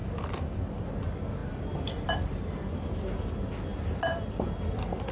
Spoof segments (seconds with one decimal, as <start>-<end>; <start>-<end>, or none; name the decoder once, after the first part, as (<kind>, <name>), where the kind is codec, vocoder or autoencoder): 0.0-0.8 (vocoder, BigVGAN v2); 1.4-2.3; 3.7-5.1